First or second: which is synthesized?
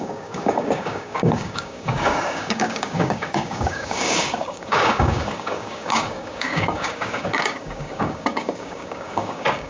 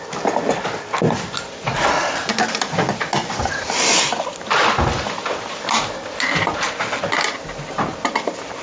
first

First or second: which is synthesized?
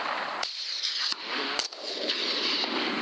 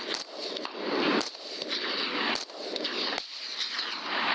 first